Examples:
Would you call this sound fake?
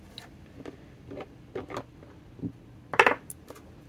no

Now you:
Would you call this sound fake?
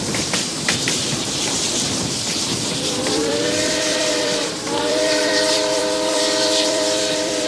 yes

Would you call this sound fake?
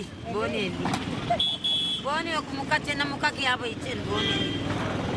no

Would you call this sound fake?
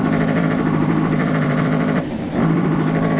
yes